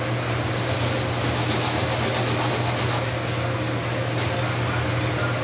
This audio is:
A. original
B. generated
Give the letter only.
A